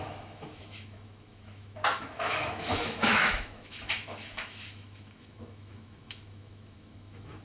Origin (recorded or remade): remade